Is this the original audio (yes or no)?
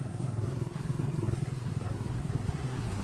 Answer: no